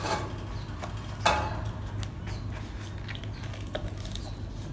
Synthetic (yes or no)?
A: no